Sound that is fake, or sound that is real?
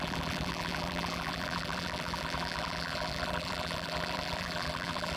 fake